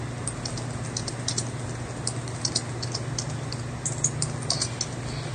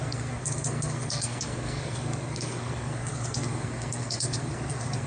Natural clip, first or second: first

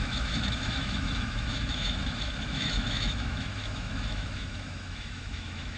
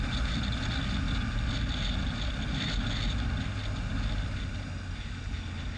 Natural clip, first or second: second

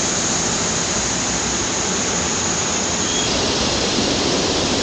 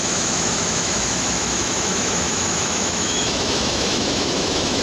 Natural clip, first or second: first